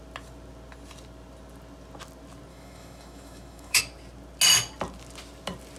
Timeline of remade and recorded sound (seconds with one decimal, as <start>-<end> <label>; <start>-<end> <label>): 0.0-2.5 recorded; 2.5-3.8 remade; 3.8-5.8 recorded